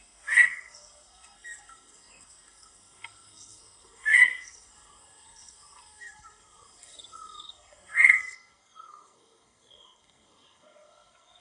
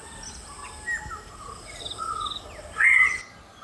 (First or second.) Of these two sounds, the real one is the second